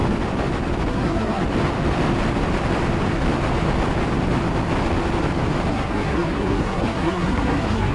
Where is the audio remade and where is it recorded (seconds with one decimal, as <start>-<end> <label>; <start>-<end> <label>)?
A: 0.0-0.9 recorded; 0.9-1.4 remade; 1.4-5.7 recorded; 5.7-7.9 remade